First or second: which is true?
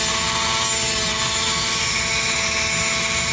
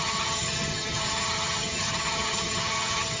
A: first